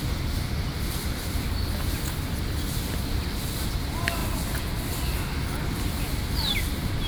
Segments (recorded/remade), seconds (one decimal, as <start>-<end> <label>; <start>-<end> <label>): 0.0-7.1 recorded